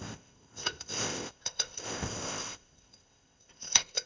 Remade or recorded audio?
remade